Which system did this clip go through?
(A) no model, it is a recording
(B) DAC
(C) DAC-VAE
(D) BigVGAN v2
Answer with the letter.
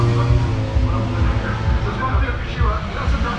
A